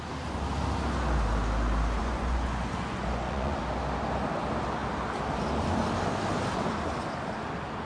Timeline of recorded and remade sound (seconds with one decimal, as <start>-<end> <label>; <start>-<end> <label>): 0.0-2.0 recorded; 2.0-3.6 remade; 3.6-7.9 recorded